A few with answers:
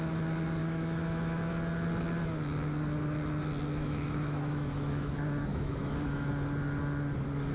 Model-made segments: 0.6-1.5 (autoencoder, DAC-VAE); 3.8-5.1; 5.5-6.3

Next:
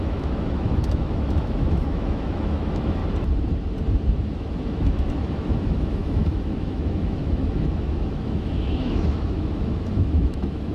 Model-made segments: 0.0-3.0 (autoencoder, DAC-VAE); 4.2-10.7

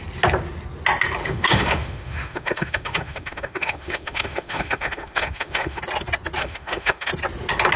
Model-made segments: 1.2-5.8 (autoencoder, DAC-VAE); 6.4-7.1

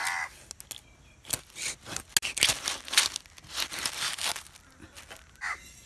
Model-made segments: none

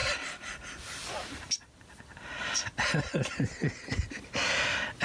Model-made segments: none